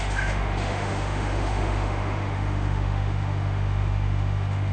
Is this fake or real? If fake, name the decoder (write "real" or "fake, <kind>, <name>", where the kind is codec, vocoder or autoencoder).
fake, autoencoder, DAC-VAE